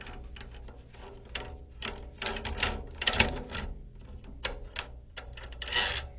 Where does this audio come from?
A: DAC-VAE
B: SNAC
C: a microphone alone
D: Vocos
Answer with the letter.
C